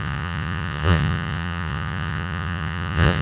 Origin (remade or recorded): remade